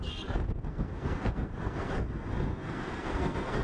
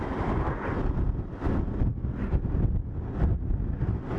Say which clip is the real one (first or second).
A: second